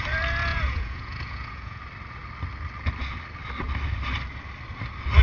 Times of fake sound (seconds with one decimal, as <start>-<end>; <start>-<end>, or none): 0.5-1.8